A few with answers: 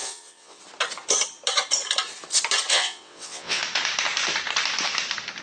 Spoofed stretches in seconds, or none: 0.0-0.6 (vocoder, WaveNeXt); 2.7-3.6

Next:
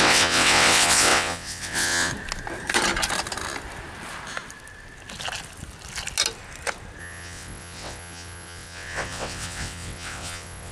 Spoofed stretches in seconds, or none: 0.0-2.1 (vocoder, WaveNeXt); 7.0-10.7

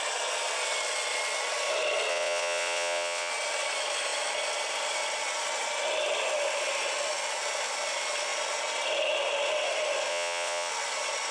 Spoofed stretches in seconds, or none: 2.1-3.3 (vocoder, WaveNeXt); 10.1-10.7